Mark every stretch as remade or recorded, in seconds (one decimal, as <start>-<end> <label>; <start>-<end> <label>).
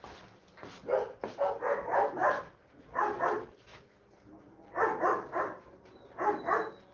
0.0-2.2 recorded; 2.2-2.8 remade; 2.8-3.7 recorded; 3.7-6.0 remade; 6.0-6.9 recorded